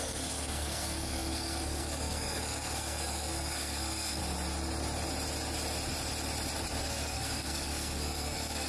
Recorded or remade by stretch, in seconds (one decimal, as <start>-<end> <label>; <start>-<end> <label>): 0.0-4.2 remade; 4.2-6.8 recorded; 6.8-8.7 remade